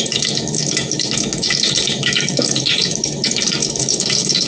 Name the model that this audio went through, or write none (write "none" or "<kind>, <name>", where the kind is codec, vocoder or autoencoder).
autoencoder, DAC-VAE